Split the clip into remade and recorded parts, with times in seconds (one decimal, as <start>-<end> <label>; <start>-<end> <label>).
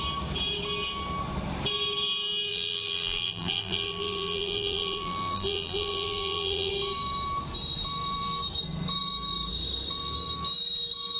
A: 0.0-2.5 recorded; 2.5-6.7 remade; 6.7-11.2 recorded